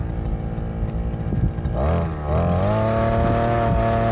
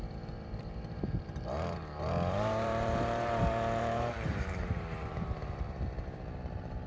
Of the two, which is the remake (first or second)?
second